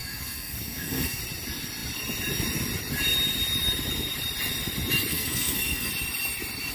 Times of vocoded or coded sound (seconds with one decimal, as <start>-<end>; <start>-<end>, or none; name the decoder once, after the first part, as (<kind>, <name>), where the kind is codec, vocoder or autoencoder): 0.0-1.2 (codec, SNAC); 5.1-5.9